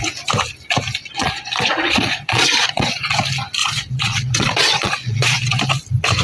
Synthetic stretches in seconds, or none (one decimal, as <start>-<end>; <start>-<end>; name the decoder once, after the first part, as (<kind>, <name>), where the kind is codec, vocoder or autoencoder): 1.0-2.9 (vocoder, Vocos); 3.6-5.6